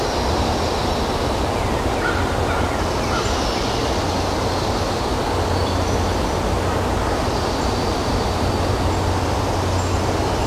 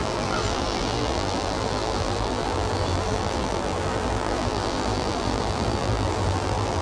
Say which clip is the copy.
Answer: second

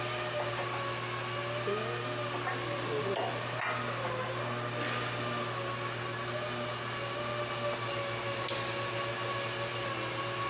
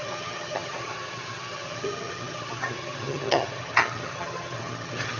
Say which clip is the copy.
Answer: second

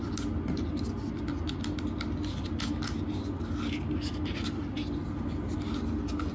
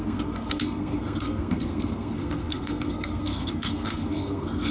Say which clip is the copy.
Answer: second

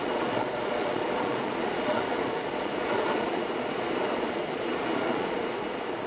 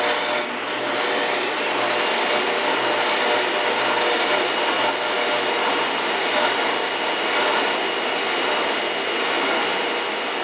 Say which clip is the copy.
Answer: first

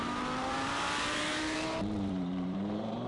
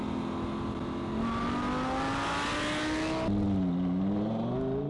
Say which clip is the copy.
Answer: first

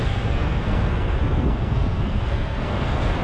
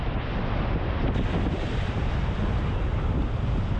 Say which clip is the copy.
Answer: first